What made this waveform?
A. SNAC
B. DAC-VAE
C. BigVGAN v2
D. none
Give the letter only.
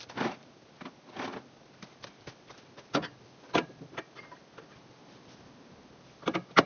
D